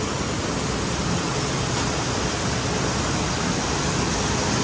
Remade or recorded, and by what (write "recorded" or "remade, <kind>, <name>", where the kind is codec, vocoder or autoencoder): recorded